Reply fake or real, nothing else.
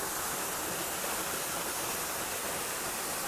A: real